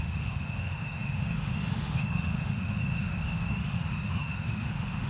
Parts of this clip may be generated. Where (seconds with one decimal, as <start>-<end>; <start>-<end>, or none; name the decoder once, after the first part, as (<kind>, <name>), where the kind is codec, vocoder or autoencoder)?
0.0-5.1 (autoencoder, DAC-VAE)